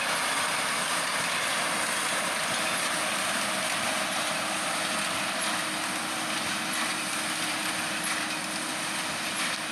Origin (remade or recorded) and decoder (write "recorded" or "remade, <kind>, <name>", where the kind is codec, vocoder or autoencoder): recorded